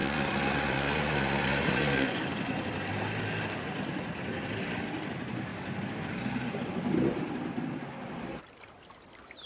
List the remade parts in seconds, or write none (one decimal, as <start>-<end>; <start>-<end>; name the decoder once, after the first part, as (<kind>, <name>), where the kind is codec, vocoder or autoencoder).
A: 0.0-2.2 (vocoder, Vocos)

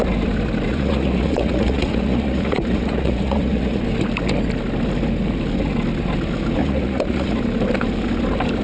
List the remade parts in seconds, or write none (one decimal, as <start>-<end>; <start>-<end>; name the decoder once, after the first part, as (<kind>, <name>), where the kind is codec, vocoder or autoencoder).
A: 0.7-3.8 (vocoder, Vocos); 6.6-7.4

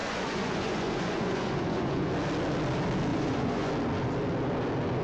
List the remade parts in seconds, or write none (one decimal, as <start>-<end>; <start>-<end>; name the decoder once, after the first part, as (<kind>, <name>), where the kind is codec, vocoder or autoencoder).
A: 0.0-2.1 (vocoder, Vocos); 3.1-3.7